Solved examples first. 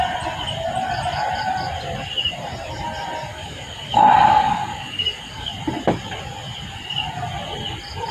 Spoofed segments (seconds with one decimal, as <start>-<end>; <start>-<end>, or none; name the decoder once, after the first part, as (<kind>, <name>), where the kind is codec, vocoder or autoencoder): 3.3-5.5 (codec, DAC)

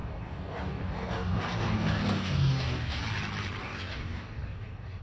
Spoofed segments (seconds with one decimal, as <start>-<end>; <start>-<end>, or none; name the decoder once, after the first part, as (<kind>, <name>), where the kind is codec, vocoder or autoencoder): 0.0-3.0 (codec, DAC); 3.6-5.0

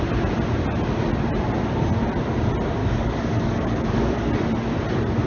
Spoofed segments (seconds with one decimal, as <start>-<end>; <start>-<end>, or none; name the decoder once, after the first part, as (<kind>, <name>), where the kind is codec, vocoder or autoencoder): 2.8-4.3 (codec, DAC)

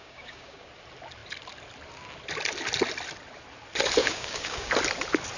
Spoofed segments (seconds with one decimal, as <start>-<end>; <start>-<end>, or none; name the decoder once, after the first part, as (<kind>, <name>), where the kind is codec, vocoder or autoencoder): 0.0-0.7 (codec, DAC); 4.0-4.7

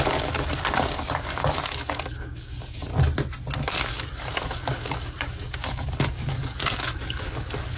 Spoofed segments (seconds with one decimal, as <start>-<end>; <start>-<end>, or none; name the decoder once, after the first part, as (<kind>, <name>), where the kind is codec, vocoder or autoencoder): 0.0-2.9 (codec, DAC); 3.7-7.8

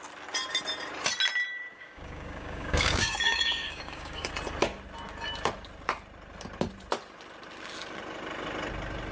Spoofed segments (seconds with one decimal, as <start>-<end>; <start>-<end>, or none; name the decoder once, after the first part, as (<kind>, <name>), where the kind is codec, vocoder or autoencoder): 1.7-4.3 (codec, DAC)

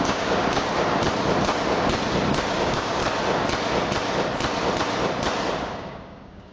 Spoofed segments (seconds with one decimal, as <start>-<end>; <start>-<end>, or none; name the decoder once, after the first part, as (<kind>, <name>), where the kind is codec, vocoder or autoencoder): 0.0-0.7 (codec, DAC); 2.3-3.0; 5.5-6.5

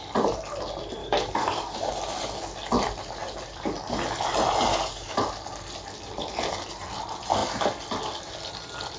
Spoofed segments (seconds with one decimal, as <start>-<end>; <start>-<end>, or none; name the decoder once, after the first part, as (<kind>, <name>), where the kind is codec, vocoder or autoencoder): 1.0-1.7 (codec, DAC); 4.7-5.3